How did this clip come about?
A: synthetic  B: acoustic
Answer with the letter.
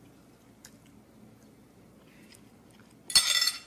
B